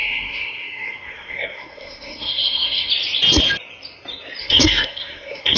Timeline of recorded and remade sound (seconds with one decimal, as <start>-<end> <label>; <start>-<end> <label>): 0.0-2.9 remade; 2.9-4.4 recorded; 4.4-5.6 remade